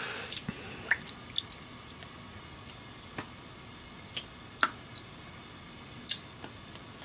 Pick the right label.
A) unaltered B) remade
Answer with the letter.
A